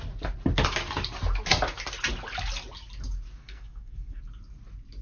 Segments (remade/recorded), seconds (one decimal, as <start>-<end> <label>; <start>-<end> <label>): 0.0-3.4 recorded; 3.4-4.2 remade; 4.2-5.0 recorded